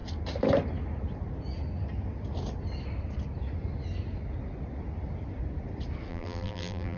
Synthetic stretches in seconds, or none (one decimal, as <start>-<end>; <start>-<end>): 6.1-7.0

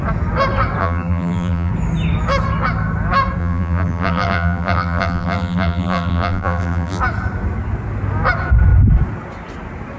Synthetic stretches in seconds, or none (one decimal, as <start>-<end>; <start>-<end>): 0.8-1.7; 3.4-7.0

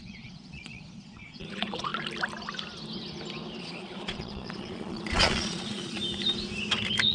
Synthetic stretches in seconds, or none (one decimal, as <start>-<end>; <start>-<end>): 0.0-1.9; 3.6-6.0

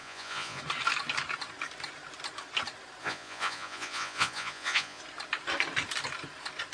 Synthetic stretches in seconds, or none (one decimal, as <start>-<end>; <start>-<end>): 0.0-0.6; 3.0-5.0

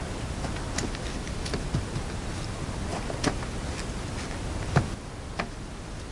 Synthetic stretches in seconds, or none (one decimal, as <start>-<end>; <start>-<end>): none

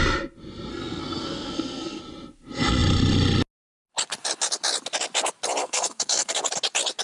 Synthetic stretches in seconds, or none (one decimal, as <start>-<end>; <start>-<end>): 0.7-2.0; 5.6-6.4

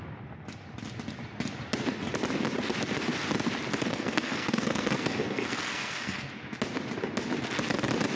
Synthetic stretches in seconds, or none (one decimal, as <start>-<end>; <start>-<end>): 3.9-6.3

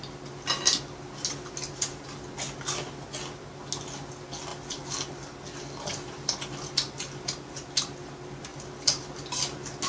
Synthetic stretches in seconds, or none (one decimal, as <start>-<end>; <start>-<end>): 4.5-7.5; 8.5-9.1